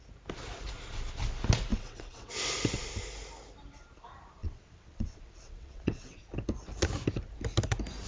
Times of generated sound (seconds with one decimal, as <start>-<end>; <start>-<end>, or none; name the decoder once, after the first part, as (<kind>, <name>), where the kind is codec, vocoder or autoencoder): 1.7-2.3 (vocoder, WaveNeXt); 4.4-6.2